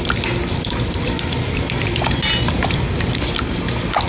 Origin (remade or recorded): recorded